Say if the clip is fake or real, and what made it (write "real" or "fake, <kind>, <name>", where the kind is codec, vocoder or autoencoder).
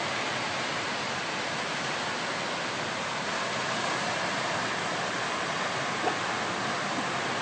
real